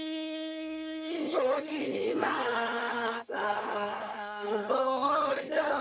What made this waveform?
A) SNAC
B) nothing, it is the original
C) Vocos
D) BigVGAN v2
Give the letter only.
A